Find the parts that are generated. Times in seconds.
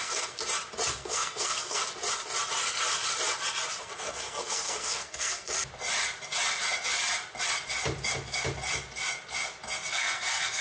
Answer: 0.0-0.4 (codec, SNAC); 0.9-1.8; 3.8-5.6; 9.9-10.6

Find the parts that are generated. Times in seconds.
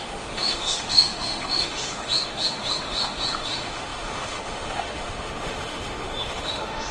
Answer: 0.0-6.9 (autoencoder, DAC-VAE)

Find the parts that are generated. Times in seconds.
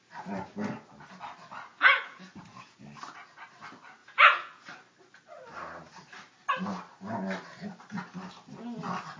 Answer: 1.7-2.8 (vocoder, Vocos); 4.0-4.7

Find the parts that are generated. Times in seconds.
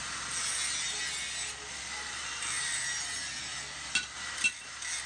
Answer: none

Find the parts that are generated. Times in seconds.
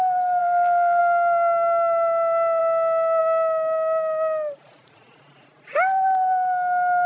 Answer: 0.4-1.0 (vocoder, BigVGAN v2)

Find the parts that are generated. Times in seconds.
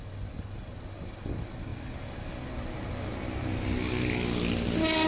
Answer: none